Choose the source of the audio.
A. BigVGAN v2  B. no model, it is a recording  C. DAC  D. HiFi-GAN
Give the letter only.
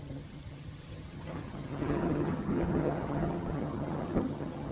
D